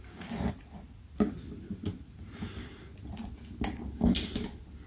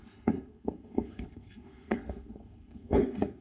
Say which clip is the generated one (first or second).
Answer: second